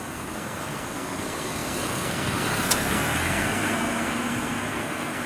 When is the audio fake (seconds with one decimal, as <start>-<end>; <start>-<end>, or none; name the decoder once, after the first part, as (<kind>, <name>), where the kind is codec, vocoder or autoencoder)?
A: 0.0-5.3 (codec, SNAC)